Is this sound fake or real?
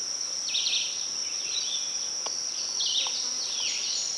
real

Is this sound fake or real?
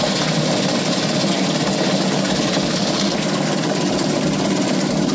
real